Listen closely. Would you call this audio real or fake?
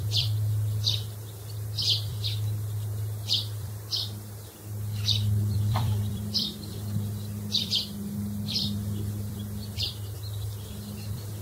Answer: fake